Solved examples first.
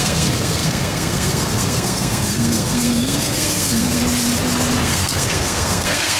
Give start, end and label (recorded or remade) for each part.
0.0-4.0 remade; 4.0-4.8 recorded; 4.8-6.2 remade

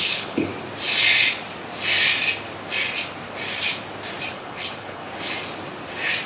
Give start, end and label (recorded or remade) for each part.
0.0-0.5 remade; 0.5-4.3 recorded; 4.3-5.0 remade; 5.0-6.3 recorded